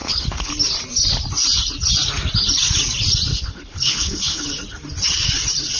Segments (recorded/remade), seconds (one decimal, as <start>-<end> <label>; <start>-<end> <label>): 0.0-0.5 remade; 0.5-3.3 recorded; 3.3-4.5 remade; 4.5-5.8 recorded